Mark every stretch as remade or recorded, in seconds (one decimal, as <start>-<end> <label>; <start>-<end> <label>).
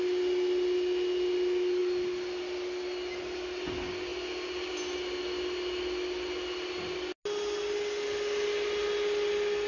0.0-9.7 recorded